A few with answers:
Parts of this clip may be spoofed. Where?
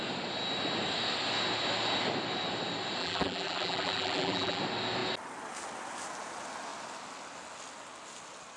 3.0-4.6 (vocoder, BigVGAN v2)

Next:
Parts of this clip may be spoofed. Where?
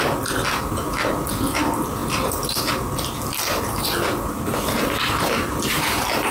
none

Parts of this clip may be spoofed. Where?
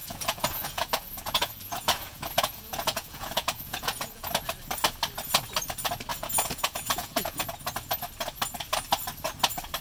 0.0-4.3 (vocoder, Vocos); 6.1-7.4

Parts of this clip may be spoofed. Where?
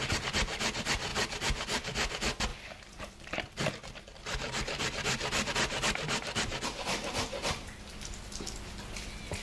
1.1-2.1 (vocoder, BigVGAN v2); 2.5-5.5; 7.4-7.9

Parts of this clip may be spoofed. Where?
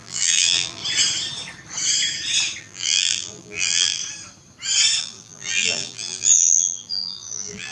0.0-0.8 (vocoder, BigVGAN v2); 2.6-4.0; 5.0-7.7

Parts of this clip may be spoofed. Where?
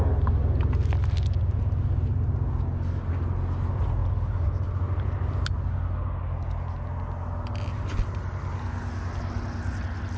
none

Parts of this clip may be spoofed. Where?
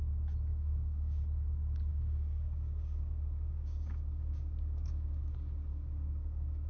0.5-1.2 (codec, DAC); 1.9-5.2; 5.7-6.7